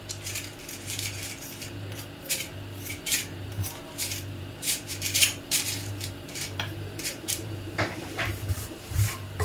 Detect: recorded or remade remade